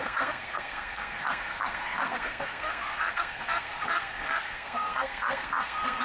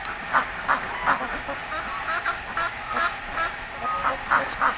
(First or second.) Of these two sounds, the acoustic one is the second